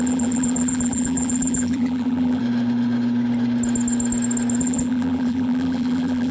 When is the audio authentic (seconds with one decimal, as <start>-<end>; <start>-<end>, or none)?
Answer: 2.4-4.6